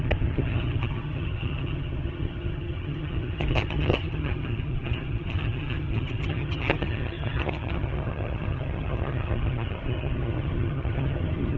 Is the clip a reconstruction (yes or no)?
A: yes